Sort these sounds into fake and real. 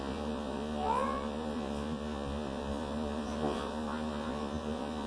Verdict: fake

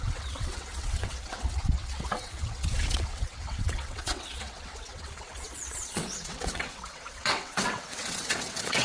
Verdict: fake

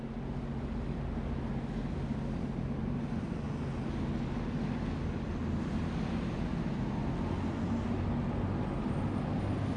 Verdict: real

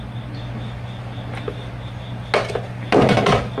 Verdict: real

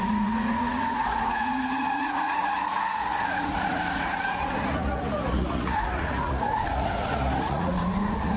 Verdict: fake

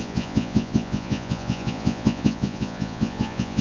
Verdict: fake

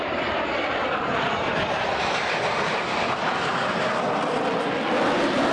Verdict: fake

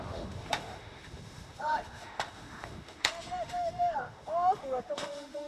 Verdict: fake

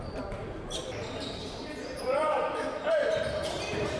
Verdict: fake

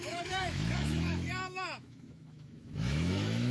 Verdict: fake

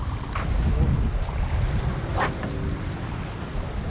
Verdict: real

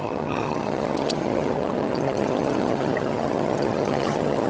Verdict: fake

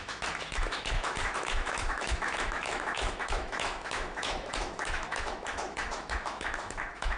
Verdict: fake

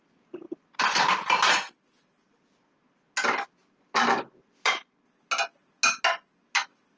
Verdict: real